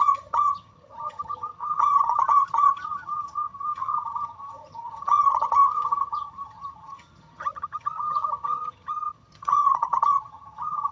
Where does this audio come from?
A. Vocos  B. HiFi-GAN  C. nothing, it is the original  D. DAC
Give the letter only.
B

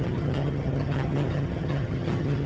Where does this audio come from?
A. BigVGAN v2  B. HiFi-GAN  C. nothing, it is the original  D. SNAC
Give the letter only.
B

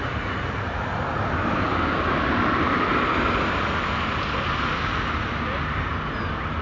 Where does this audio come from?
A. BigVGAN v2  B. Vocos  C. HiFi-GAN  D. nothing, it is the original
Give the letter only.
D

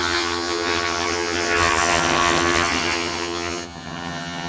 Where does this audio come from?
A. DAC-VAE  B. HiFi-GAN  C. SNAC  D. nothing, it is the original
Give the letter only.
B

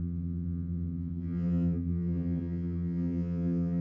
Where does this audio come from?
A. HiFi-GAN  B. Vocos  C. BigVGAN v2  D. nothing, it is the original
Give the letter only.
A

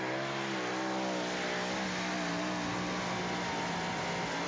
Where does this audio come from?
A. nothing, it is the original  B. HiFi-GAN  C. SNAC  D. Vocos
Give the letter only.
A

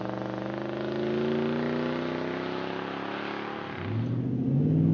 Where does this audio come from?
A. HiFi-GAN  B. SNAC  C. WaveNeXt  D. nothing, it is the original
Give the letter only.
D